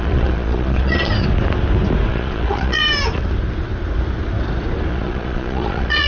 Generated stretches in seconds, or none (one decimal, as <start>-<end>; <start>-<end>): 0.0-1.1; 2.1-2.8; 4.9-6.1

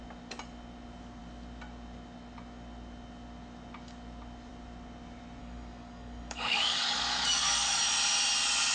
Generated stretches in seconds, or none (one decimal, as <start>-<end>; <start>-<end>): 5.4-7.8

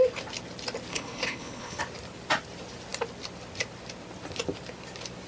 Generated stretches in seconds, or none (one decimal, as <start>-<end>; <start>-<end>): 0.9-1.8

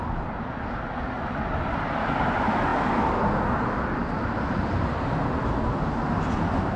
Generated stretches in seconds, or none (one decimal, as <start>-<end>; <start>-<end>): none